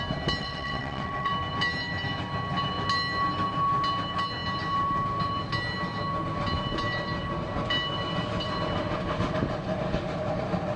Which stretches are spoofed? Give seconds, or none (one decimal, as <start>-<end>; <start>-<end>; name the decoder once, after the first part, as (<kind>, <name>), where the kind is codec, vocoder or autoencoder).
0.4-1.3 (vocoder, WaveNeXt)